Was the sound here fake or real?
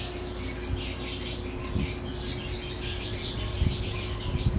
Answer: real